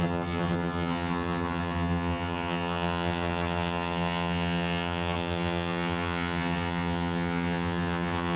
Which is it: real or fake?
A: fake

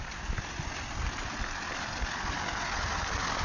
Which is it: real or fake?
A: real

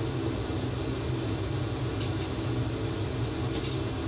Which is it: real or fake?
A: real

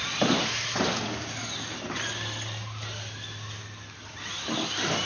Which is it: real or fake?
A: real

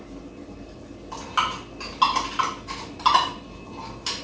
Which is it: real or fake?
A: real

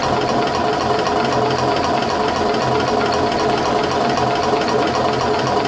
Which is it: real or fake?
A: real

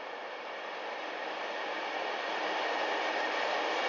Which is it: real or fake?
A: real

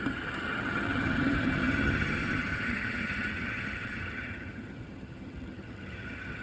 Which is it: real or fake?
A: fake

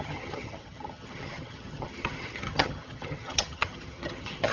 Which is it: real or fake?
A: fake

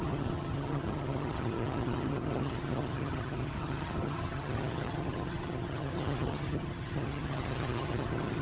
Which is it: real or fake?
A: fake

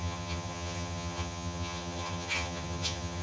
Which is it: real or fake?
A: fake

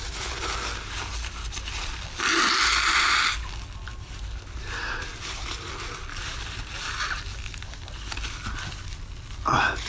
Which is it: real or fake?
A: real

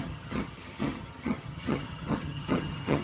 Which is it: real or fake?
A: fake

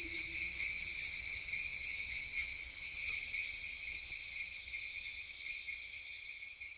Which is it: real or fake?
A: fake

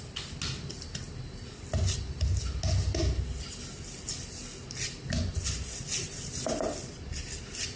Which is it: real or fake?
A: real